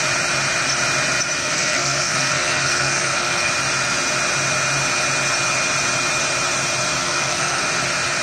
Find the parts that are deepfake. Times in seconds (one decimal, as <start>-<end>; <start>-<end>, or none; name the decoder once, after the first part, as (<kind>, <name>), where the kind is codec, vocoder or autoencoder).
1.4-3.5 (codec, SNAC); 7.0-7.6